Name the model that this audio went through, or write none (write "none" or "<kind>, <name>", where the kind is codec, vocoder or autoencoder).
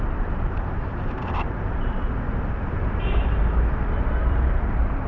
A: vocoder, BigVGAN v2